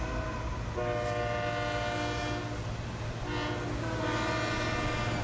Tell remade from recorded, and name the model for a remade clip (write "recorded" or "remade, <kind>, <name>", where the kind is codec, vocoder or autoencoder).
recorded